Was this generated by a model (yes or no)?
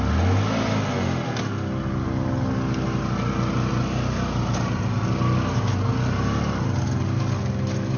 no